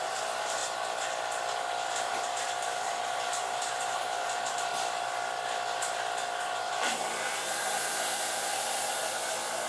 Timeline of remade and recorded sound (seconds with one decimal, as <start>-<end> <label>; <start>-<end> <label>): 0.0-0.6 remade; 0.6-2.1 recorded; 2.1-4.7 remade; 4.7-6.4 recorded; 6.4-9.0 remade; 9.0-9.7 recorded